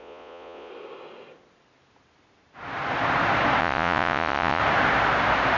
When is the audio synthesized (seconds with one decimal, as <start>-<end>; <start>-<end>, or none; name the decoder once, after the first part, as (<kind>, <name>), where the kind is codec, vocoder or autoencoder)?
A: 0.0-0.7 (vocoder, Vocos); 3.6-4.6